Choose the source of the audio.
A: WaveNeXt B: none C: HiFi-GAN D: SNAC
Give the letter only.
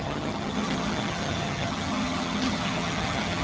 C